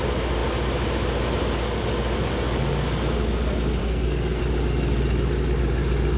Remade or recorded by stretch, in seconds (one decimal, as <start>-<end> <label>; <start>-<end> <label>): 0.0-3.8 recorded; 3.8-4.4 remade; 4.4-6.2 recorded